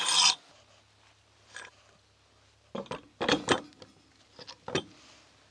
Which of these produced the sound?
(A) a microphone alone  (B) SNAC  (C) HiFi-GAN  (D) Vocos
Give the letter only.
A